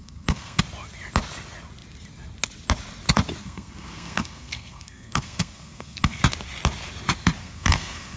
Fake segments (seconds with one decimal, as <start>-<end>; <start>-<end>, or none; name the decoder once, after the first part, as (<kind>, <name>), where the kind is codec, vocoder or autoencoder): 0.0-0.6 (codec, SNAC); 3.4-6.2; 7.4-8.2